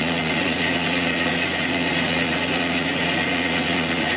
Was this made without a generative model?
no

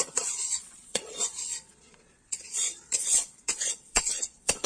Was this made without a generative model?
no